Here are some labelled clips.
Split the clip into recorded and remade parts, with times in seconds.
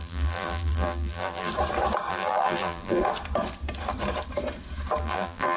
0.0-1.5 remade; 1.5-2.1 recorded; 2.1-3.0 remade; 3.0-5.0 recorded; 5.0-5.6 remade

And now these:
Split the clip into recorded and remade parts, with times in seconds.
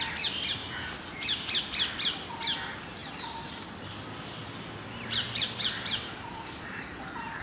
0.0-0.6 recorded; 0.6-1.9 remade; 1.9-4.4 recorded; 4.4-6.8 remade; 6.8-7.4 recorded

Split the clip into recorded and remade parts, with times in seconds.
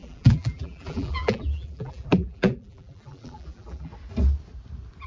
0.0-3.9 remade; 3.9-5.1 recorded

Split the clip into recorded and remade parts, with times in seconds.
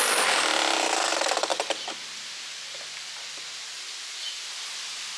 0.0-5.2 recorded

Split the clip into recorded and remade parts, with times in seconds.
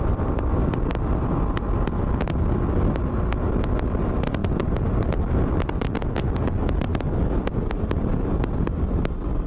0.0-4.4 recorded; 4.4-5.4 remade; 5.4-9.5 recorded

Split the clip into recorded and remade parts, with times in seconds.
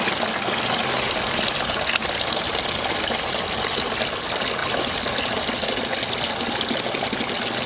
0.0-7.7 recorded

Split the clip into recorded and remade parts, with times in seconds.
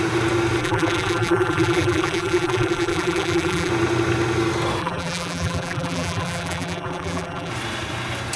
0.0-0.6 recorded; 0.6-3.7 remade; 3.7-4.8 recorded; 4.8-7.5 remade; 7.5-8.4 recorded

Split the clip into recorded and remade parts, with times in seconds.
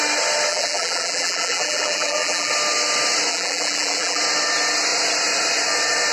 0.0-0.5 recorded; 0.5-2.5 remade; 2.5-3.3 recorded; 3.3-4.2 remade; 4.2-6.1 recorded